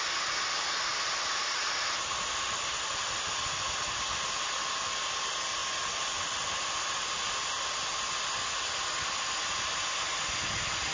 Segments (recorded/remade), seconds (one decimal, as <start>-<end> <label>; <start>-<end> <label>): 0.0-0.9 recorded; 0.9-1.4 remade; 1.4-10.9 recorded